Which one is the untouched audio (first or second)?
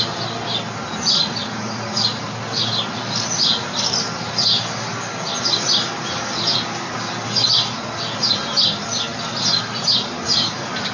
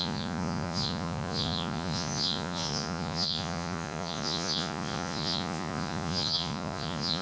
first